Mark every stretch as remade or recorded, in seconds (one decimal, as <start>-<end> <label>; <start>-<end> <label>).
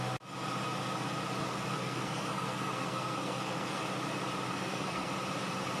0.0-1.4 recorded; 1.4-3.8 remade; 3.8-4.5 recorded; 4.5-5.1 remade; 5.1-5.8 recorded